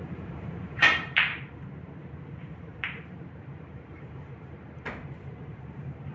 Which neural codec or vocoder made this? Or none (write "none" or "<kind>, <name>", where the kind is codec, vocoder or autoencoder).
vocoder, BigVGAN v2